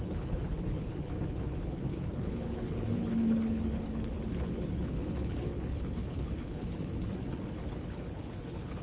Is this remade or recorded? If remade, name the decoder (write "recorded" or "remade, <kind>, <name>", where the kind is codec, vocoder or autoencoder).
remade, codec, HILCodec